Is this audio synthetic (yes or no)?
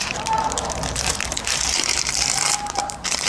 yes